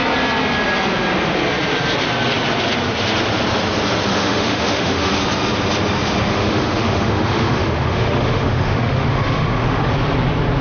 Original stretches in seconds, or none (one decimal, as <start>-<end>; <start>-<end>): 0.0-4.1; 5.2-6.3; 9.9-10.6